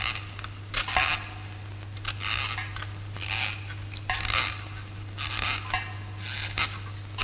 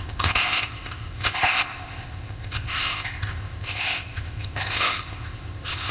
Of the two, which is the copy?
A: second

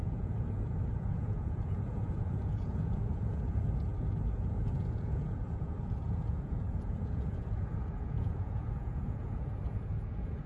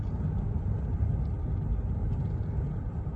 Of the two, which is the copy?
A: first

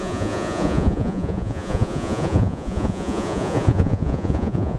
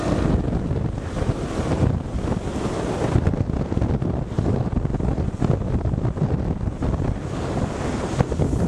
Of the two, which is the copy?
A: first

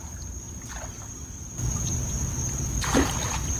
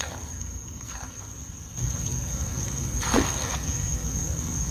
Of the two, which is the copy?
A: second